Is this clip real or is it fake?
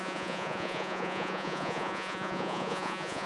fake